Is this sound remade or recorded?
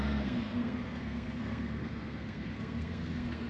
remade